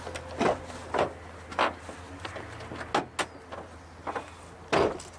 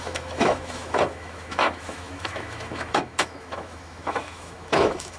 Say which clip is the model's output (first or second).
second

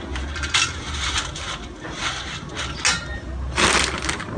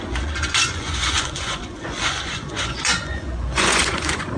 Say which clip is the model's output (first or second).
second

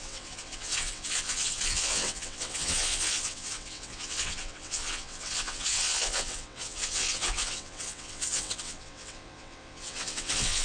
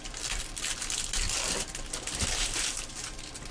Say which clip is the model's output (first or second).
first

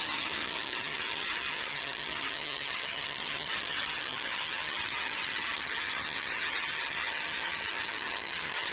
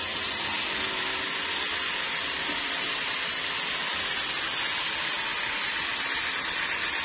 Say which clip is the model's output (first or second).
first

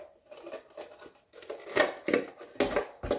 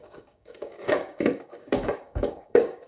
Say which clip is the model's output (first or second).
second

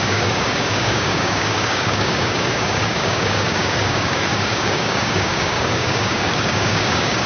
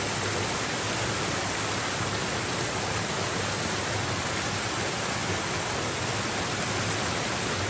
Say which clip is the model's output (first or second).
first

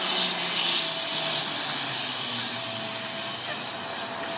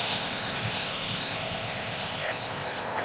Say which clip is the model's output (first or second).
second